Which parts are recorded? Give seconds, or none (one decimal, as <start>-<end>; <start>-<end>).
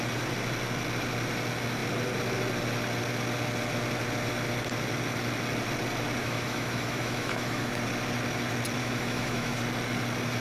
0.0-6.2; 7.7-8.8; 9.6-10.4